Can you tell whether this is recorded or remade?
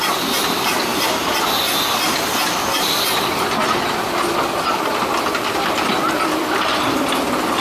recorded